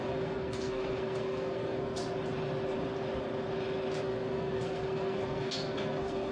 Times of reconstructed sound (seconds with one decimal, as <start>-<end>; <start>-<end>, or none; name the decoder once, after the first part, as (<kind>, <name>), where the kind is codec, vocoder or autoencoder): 0.0-2.0 (codec, SNAC); 4.0-6.3